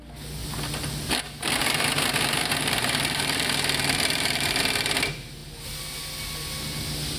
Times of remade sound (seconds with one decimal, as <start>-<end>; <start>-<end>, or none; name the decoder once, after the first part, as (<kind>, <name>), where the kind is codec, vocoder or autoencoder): 1.6-4.6 (vocoder, BigVGAN v2)